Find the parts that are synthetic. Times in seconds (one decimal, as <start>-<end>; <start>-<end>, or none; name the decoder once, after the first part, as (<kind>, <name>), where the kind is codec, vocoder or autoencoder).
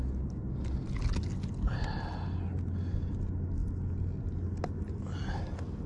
none